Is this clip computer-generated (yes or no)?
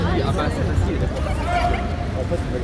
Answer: no